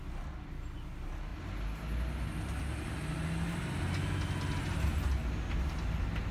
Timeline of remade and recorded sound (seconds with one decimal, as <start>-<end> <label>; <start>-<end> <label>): 0.0-6.3 recorded